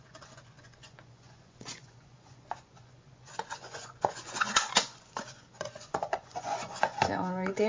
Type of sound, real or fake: fake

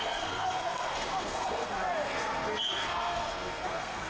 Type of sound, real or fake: fake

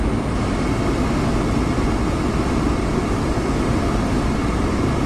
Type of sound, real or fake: real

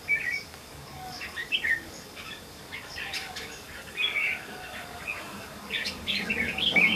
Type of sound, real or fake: fake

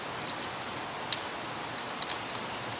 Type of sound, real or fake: real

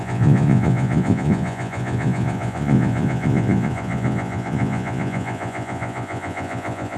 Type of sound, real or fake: fake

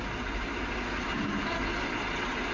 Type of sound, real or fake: real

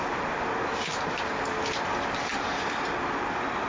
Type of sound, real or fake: real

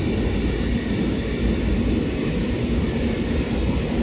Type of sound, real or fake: real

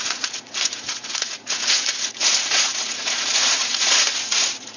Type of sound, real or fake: fake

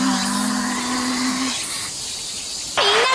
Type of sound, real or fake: real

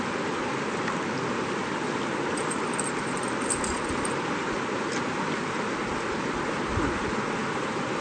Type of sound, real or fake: real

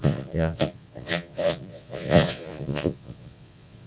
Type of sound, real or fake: fake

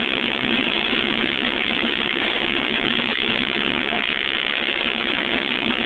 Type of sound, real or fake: fake